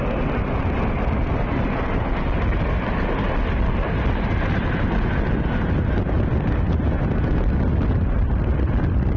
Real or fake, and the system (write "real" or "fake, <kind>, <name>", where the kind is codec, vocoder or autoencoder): real